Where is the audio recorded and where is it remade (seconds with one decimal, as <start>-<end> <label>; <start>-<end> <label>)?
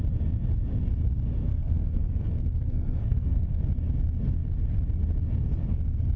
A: 0.0-1.5 recorded; 1.5-3.6 remade; 3.6-6.2 recorded